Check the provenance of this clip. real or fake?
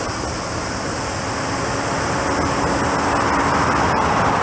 real